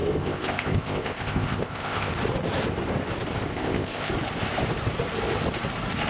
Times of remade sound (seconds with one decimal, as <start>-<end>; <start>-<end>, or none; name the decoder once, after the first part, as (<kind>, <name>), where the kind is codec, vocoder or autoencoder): 0.0-2.1 (codec, ZipCodec); 3.5-4.1